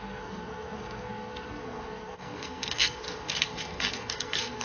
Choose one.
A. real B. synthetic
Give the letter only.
B